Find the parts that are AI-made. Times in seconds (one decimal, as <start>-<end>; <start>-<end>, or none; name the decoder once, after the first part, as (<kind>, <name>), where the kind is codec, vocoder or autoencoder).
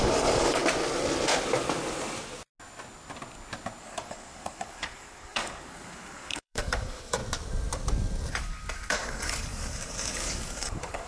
0.0-0.6 (codec, DAC); 3.8-7.2; 8.3-11.1